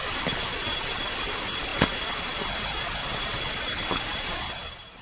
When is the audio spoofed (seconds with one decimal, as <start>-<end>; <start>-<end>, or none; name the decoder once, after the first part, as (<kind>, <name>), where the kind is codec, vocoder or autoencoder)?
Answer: none